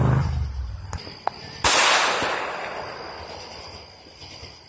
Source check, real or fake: real